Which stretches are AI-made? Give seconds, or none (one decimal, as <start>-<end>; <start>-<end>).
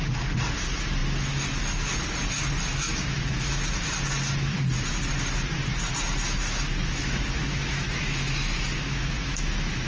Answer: 2.7-3.7; 6.7-9.9